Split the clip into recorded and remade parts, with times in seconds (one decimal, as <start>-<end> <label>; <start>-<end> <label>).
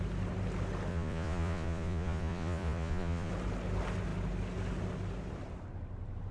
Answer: 0.0-0.9 recorded; 0.9-3.3 remade; 3.3-6.3 recorded